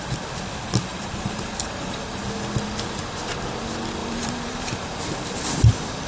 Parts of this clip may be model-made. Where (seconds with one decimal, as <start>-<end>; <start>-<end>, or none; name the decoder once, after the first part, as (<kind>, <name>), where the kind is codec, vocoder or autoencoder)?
0.9-2.2 (vocoder, BigVGAN v2); 4.0-5.0